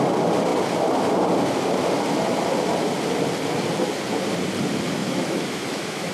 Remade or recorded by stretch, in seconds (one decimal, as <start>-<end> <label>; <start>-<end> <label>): 0.0-5.0 recorded; 5.0-6.1 remade